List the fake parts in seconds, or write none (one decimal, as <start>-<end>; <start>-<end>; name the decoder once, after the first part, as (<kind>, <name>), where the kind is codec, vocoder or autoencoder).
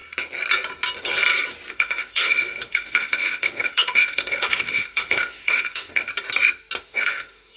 1.7-6.1 (autoencoder, DAC-VAE); 6.8-7.6